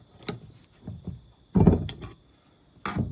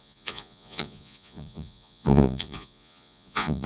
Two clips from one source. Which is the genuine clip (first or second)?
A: first